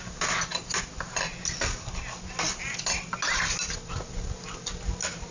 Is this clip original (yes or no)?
yes